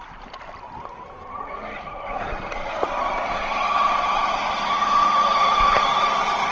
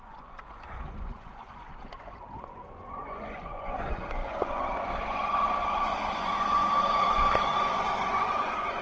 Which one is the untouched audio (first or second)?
first